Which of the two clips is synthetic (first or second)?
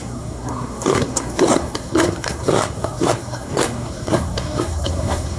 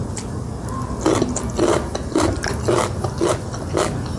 first